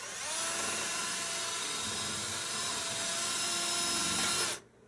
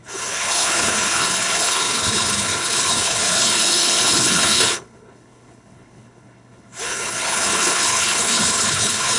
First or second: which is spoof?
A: second